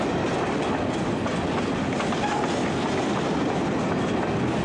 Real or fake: real